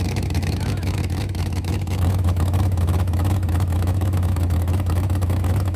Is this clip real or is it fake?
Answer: fake